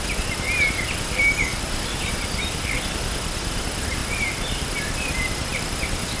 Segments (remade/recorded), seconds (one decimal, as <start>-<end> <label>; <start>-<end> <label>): 0.0-1.5 recorded; 1.5-2.1 remade; 2.1-4.0 recorded; 4.0-4.8 remade; 4.8-5.5 recorded; 5.5-6.2 remade